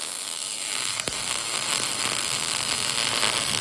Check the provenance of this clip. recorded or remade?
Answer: recorded